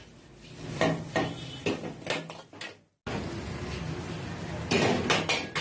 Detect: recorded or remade recorded